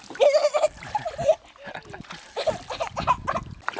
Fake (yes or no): no